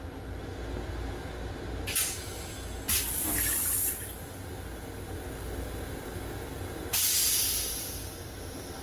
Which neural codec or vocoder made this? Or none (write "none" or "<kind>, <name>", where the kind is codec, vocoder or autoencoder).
none